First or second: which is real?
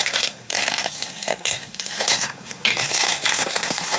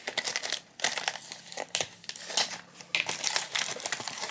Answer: second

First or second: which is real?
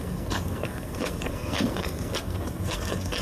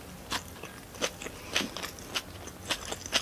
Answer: second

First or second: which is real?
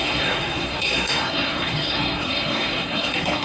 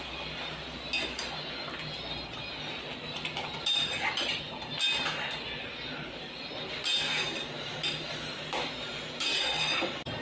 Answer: second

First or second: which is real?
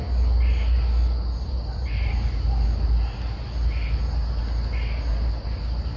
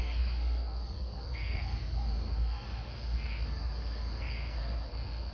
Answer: first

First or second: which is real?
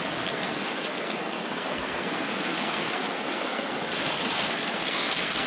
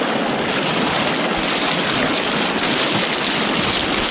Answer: second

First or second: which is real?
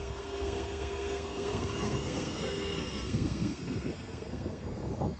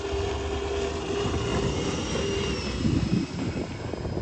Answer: second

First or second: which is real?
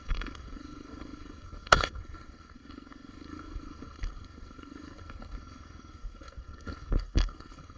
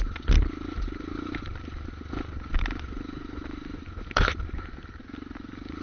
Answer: second